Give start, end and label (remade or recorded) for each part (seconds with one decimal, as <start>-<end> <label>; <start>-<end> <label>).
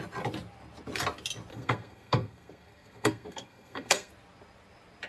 0.0-1.5 recorded; 1.5-4.1 remade; 4.1-5.1 recorded